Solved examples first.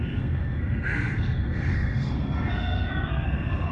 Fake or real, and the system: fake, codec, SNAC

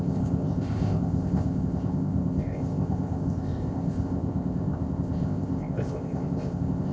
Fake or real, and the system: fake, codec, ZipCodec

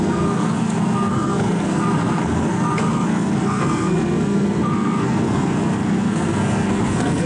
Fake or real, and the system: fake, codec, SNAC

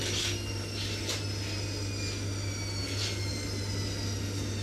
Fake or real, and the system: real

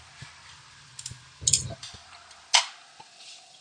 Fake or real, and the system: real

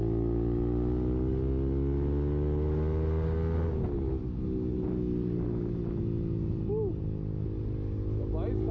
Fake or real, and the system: real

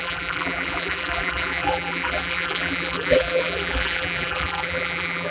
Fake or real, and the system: fake, vocoder, BigVGAN v2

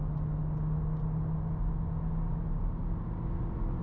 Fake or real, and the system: real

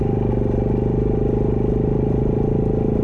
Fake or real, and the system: real